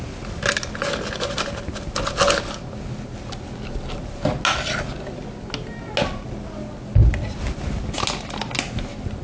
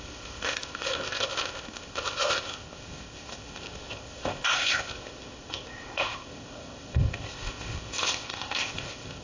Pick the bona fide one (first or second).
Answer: first